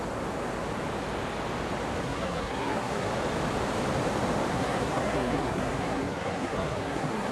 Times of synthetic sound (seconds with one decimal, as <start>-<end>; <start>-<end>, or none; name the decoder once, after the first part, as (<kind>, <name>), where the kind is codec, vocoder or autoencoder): 2.0-3.1 (codec, SNAC); 4.5-7.3